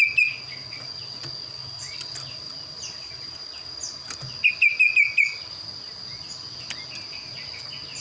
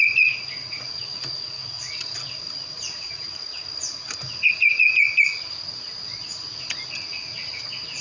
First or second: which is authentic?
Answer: first